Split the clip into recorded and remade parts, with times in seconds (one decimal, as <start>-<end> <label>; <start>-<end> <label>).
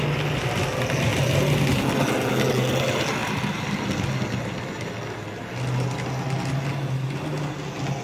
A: 0.0-8.0 recorded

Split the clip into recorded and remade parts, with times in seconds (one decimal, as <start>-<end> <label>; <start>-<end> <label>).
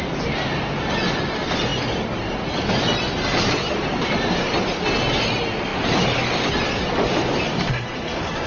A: 0.0-8.5 recorded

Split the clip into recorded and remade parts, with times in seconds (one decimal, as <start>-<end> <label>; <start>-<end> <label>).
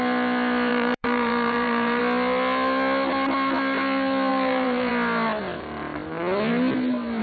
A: 0.0-0.7 recorded; 0.7-2.0 remade; 2.0-4.3 recorded; 4.3-4.9 remade; 4.9-7.2 recorded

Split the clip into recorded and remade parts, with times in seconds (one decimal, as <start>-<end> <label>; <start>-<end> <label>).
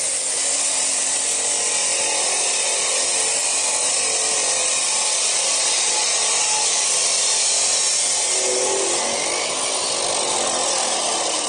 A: 0.0-0.8 recorded; 0.8-2.9 remade; 2.9-3.4 recorded; 3.4-5.2 remade; 5.2-11.5 recorded